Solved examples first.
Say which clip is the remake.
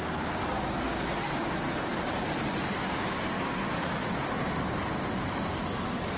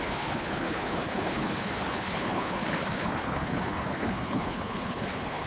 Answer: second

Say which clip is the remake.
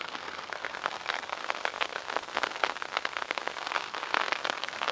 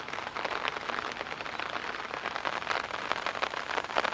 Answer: first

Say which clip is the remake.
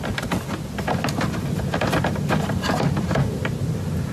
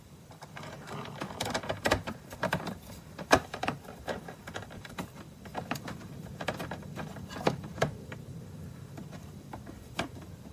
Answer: second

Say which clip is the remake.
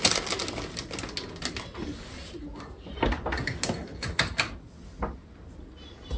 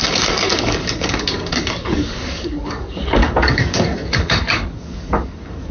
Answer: second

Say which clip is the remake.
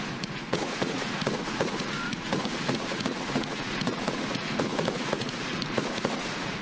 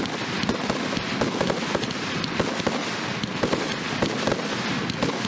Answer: first